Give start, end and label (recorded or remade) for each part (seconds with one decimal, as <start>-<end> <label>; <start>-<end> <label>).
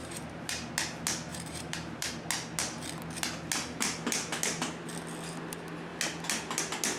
0.0-0.7 remade; 0.7-1.3 recorded; 1.3-2.1 remade; 2.1-7.0 recorded